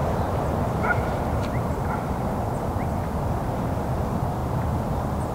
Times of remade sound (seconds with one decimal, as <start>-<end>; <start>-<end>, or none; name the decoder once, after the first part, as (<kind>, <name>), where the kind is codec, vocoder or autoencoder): 0.0-2.3 (vocoder, BigVGAN v2); 4.4-5.3